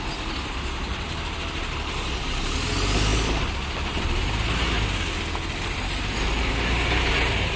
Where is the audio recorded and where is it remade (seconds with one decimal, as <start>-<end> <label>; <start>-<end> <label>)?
0.0-7.6 recorded